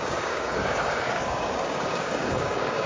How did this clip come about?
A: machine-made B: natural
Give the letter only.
A